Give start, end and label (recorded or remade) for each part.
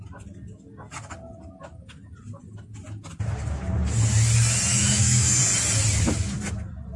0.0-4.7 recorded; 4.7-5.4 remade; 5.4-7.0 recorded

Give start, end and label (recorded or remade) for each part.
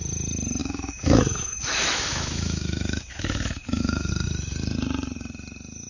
0.0-0.6 recorded; 0.6-4.1 remade; 4.1-5.9 recorded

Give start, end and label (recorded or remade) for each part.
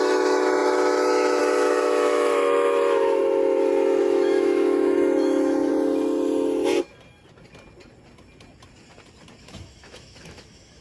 0.0-3.2 remade; 3.2-4.0 recorded; 4.0-5.7 remade; 5.7-9.4 recorded; 9.4-10.8 remade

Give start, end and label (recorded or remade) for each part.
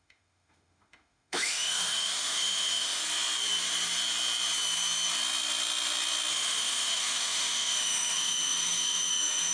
0.0-3.0 remade; 3.0-6.3 recorded; 6.3-9.5 remade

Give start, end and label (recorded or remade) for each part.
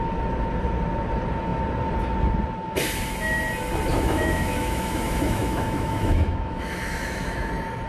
0.0-3.9 recorded; 3.9-7.5 remade; 7.5-7.9 recorded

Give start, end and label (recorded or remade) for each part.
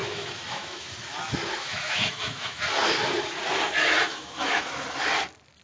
0.0-0.9 remade; 0.9-1.5 recorded; 1.5-2.6 remade; 2.6-4.1 recorded; 4.1-4.7 remade; 4.7-5.6 recorded